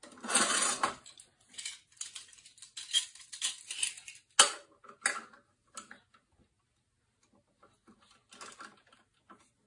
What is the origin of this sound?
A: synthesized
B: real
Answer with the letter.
B